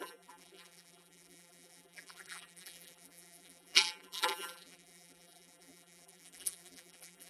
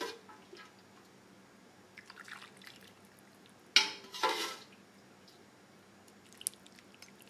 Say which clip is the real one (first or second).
second